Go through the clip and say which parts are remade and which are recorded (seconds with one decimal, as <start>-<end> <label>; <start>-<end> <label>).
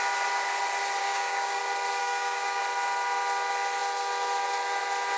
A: 0.0-1.0 recorded; 1.0-1.6 remade; 1.6-2.0 recorded; 2.0-2.6 remade; 2.6-5.2 recorded